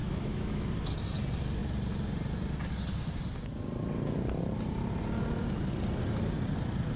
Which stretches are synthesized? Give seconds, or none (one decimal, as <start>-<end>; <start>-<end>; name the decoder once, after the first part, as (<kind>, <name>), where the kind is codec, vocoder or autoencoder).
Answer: 0.0-0.7 (autoencoder, DAC-VAE)